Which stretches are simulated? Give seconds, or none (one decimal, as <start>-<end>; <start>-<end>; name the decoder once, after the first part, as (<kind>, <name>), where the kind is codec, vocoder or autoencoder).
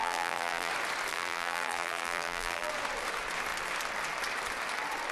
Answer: 0.0-0.7 (vocoder, BigVGAN v2); 1.1-2.7